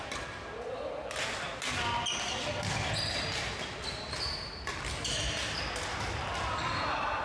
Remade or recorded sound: recorded